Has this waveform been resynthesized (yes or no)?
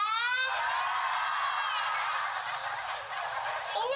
no